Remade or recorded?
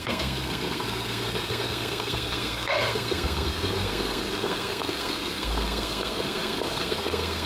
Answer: remade